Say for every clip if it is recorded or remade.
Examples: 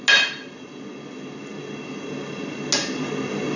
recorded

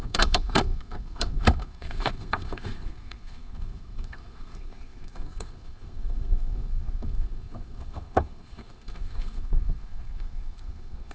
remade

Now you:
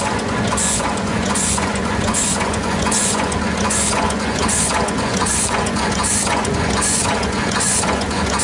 remade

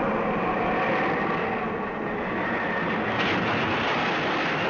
recorded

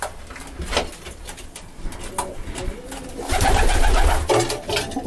recorded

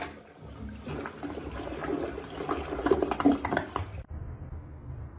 recorded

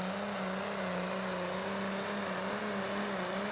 recorded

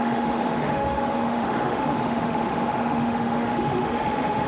remade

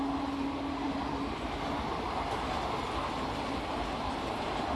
recorded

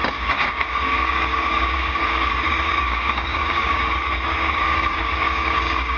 remade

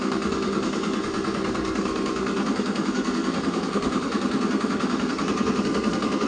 remade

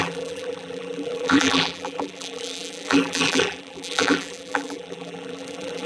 remade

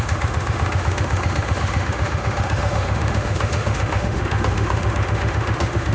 remade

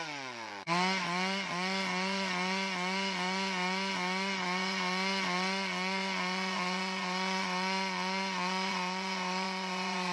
remade